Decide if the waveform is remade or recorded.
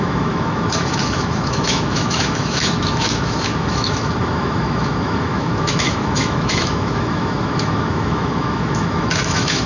remade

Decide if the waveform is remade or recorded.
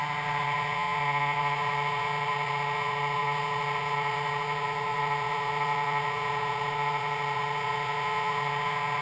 remade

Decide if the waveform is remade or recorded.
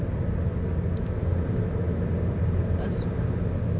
recorded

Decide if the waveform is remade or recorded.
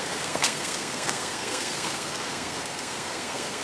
remade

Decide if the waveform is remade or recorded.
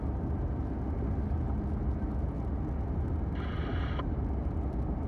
recorded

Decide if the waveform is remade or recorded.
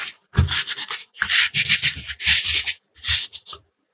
recorded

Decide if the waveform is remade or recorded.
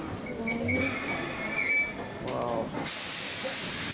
recorded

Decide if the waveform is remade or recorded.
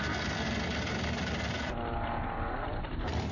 recorded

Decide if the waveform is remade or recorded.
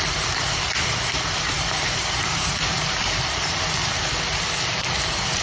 remade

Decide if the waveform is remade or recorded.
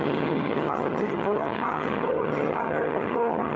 remade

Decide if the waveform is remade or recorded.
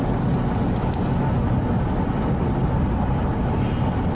recorded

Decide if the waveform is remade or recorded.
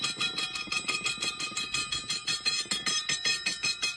recorded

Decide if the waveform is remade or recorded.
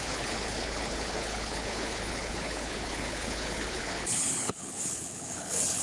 remade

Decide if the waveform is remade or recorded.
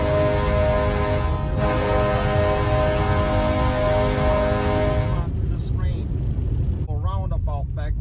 recorded